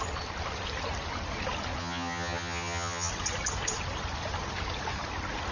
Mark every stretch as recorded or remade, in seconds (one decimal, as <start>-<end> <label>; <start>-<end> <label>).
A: 0.0-1.8 recorded; 1.8-3.1 remade; 3.1-5.5 recorded